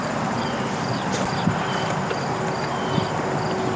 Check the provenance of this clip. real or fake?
real